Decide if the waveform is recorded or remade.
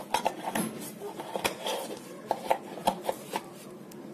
recorded